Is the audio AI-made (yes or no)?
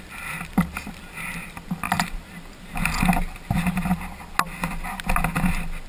no